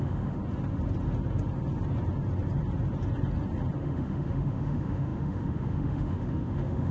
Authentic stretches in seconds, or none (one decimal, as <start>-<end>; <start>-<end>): 0.4-3.8

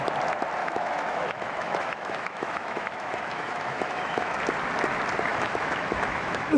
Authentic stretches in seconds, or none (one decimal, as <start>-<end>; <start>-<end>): 0.0-0.6; 4.4-5.3

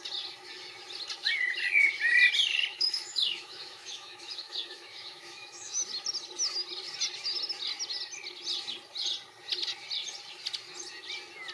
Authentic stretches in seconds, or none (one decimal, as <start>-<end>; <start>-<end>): 0.0-2.7; 5.8-11.5

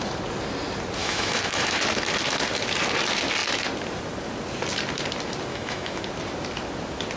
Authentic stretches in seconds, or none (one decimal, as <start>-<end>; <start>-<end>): 0.0-1.0; 1.8-5.5; 6.0-7.2

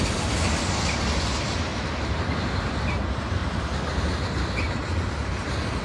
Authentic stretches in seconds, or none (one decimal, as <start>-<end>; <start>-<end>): 0.0-5.8

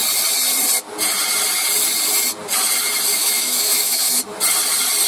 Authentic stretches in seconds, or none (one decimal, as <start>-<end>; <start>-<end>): 0.0-3.1; 4.2-5.1

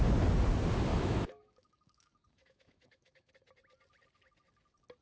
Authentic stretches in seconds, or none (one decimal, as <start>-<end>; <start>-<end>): 0.0-0.9; 3.3-5.0

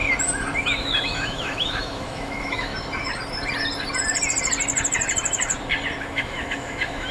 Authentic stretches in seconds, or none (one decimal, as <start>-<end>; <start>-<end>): 0.0-0.6; 2.7-6.0